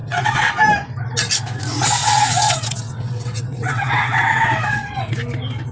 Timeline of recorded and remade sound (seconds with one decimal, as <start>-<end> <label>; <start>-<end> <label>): 0.0-0.5 remade; 0.5-2.0 recorded; 2.0-5.1 remade; 5.1-5.7 recorded